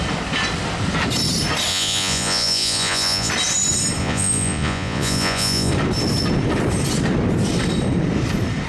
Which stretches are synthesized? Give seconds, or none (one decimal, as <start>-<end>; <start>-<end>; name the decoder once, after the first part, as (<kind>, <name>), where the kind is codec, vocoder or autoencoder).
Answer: 1.7-3.3 (vocoder, Vocos); 4.0-5.7